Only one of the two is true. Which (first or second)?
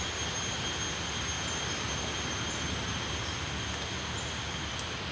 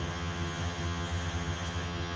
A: first